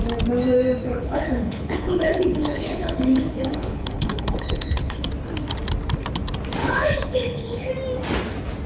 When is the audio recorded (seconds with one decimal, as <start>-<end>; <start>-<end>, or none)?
0.0-0.8; 5.1-6.6; 7.7-8.7